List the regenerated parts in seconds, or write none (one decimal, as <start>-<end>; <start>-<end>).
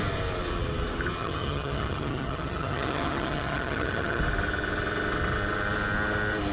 1.2-4.2